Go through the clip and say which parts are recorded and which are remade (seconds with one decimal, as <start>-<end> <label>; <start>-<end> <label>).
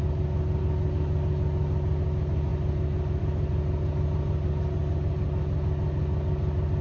0.0-6.8 recorded